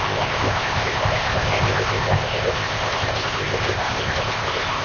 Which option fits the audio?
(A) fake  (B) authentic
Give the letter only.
A